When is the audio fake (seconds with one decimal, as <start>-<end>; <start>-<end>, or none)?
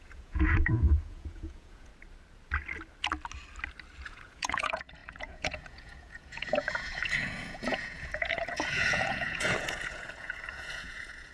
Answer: 0.0-1.9; 4.1-11.3